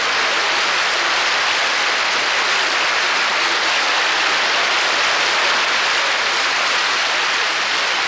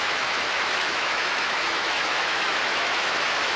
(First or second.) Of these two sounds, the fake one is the second